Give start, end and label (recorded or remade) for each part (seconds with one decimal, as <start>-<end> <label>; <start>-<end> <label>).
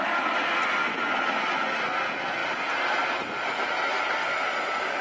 0.0-5.0 recorded